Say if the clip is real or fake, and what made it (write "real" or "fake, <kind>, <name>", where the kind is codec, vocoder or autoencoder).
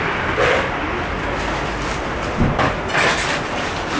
real